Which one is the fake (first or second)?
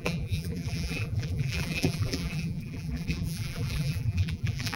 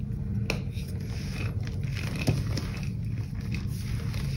first